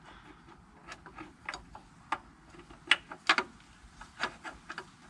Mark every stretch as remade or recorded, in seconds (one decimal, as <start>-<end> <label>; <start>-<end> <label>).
0.0-5.1 recorded